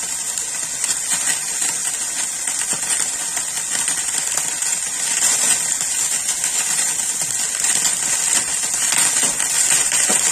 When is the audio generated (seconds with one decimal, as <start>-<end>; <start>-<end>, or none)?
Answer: none